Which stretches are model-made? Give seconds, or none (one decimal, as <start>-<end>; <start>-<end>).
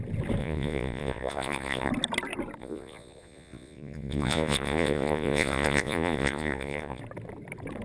0.4-1.9; 2.6-7.0